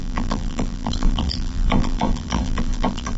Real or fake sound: fake